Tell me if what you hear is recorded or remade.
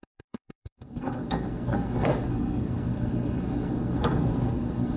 remade